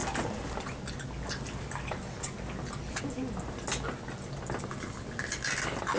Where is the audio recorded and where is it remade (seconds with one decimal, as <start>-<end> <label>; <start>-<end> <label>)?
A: 0.0-6.0 recorded